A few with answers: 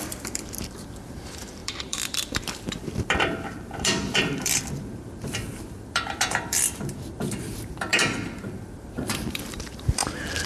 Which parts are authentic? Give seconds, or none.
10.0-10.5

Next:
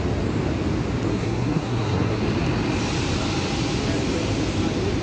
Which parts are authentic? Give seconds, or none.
0.0-1.1; 2.2-5.0